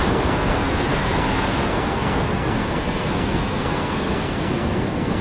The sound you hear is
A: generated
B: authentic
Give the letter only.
A